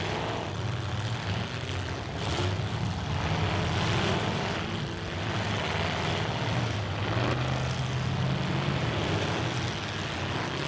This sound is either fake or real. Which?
real